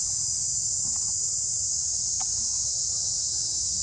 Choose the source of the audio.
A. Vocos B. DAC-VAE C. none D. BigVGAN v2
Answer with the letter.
C